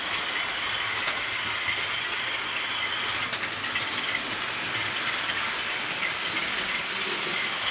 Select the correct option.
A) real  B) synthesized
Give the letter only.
A